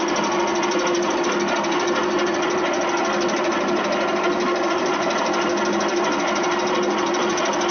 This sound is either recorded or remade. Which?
recorded